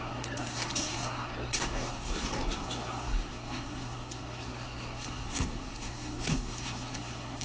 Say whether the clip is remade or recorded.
remade